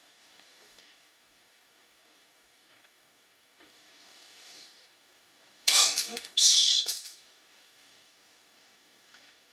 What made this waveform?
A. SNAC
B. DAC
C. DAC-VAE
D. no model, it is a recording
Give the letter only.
B